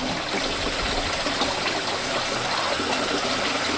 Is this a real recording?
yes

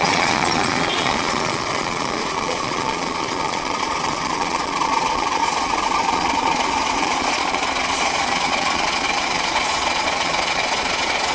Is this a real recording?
no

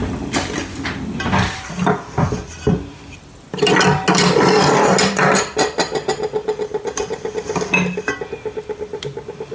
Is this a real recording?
yes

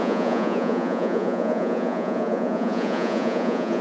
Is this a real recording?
no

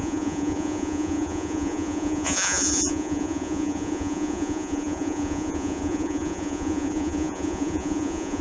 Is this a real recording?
no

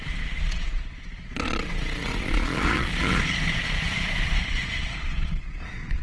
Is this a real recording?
no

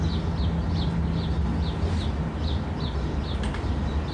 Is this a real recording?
yes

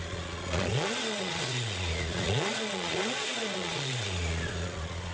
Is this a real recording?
no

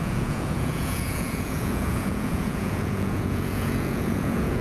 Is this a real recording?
no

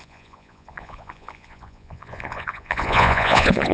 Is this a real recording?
no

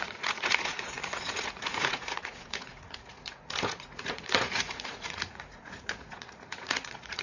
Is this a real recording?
no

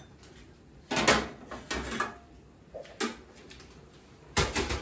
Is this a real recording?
yes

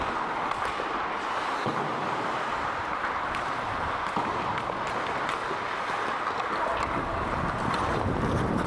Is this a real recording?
yes